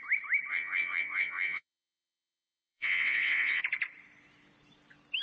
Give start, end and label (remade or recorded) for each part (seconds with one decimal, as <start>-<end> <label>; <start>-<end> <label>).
0.0-0.5 recorded; 0.5-3.6 remade; 3.6-5.2 recorded